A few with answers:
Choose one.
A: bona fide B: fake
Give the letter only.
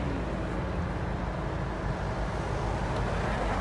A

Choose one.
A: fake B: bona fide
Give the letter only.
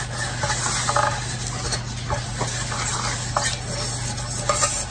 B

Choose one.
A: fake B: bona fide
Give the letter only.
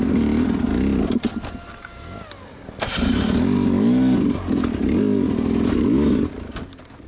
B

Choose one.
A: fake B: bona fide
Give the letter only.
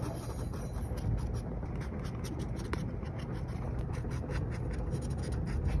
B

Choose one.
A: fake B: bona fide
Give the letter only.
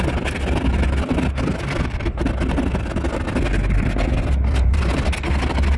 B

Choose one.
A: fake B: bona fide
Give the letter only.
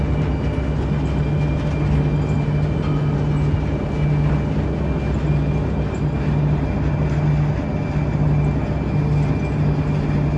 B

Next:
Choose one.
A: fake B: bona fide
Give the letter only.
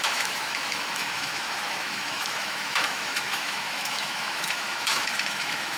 A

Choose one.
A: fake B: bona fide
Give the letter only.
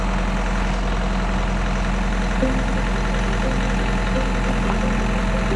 B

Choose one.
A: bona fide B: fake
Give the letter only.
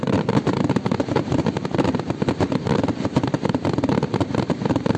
B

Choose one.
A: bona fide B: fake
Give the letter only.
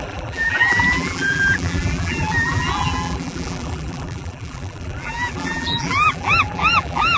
B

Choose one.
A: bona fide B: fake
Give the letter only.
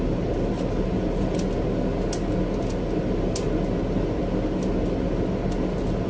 A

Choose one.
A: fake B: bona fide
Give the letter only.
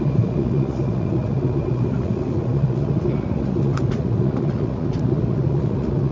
A